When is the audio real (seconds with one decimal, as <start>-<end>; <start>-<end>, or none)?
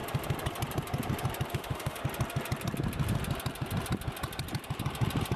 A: 0.0-1.5; 2.0-5.4